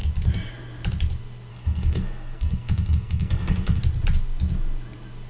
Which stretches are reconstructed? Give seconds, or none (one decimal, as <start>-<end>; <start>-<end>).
1.5-3.8